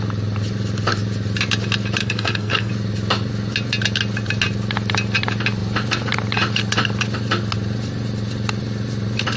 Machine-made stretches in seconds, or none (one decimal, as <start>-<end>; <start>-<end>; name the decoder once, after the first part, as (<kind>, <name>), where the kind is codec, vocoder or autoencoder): 2.0-2.7 (codec, SNAC)